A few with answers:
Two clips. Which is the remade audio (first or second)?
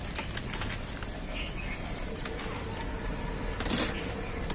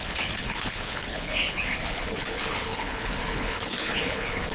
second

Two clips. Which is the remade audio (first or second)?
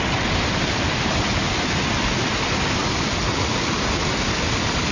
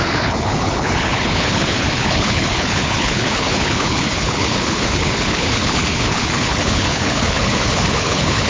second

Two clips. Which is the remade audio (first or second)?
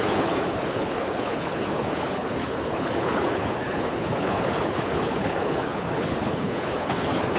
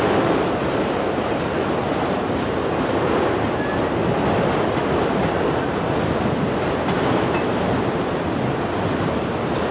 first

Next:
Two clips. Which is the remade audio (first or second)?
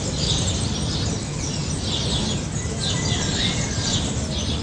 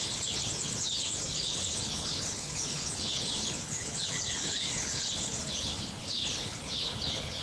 second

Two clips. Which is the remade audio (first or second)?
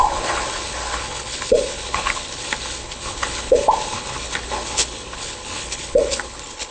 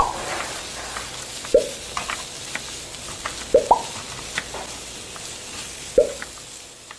first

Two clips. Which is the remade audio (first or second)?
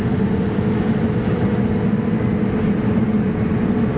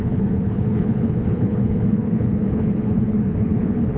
second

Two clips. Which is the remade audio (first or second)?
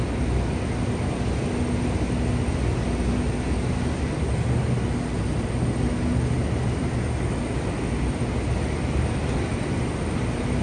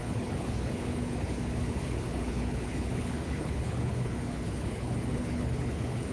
second